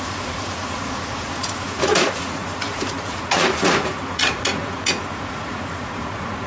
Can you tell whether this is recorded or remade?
remade